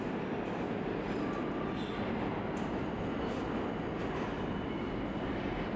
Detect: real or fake real